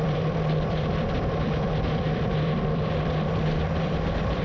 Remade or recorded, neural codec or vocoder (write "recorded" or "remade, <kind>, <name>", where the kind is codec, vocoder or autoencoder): remade, vocoder, BigVGAN v2